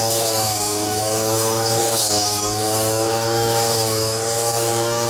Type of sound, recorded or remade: remade